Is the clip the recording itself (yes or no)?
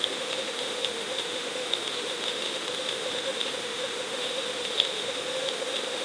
no